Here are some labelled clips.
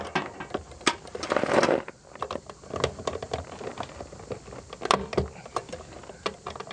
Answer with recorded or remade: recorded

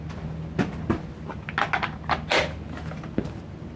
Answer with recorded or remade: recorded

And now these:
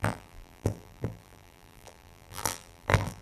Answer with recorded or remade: remade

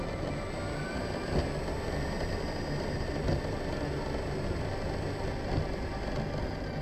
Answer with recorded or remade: recorded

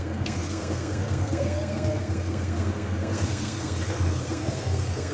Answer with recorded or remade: remade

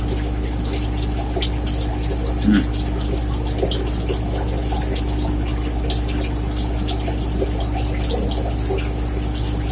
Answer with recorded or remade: recorded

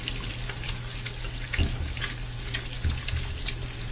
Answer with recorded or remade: recorded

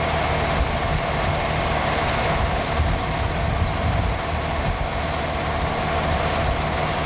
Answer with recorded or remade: recorded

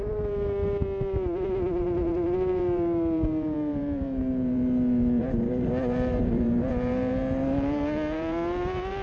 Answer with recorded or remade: remade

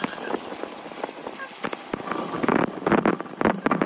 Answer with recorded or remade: remade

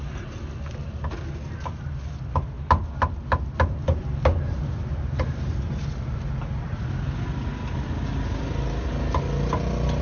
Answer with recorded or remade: recorded